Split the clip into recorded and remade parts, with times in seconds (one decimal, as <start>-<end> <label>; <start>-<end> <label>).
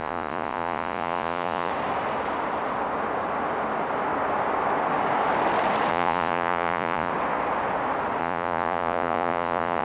0.0-1.7 remade; 1.7-5.9 recorded; 5.9-7.1 remade; 7.1-8.2 recorded; 8.2-9.8 remade